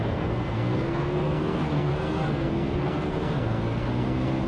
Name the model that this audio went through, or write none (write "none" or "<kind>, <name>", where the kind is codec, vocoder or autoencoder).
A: codec, SNAC